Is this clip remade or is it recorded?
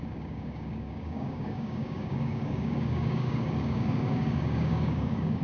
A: remade